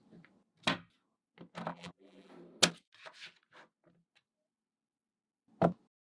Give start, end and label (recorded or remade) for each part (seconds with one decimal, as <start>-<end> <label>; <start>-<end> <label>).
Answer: 0.0-1.7 recorded; 1.7-2.3 remade; 2.3-6.0 recorded

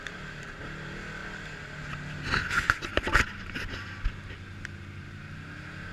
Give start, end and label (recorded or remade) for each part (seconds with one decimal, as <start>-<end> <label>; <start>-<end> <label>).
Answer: 0.0-5.9 recorded

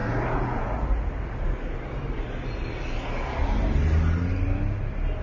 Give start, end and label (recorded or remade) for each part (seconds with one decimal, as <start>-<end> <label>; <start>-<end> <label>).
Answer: 0.0-5.2 recorded